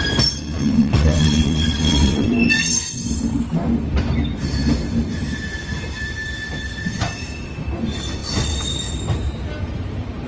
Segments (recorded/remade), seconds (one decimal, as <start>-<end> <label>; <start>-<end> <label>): 0.0-0.4 recorded; 0.4-2.3 remade; 2.3-10.3 recorded